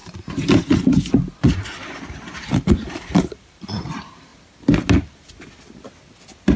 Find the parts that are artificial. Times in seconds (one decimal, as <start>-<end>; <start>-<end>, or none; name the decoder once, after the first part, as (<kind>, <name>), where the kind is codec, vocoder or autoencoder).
2.4-4.3 (vocoder, BigVGAN v2)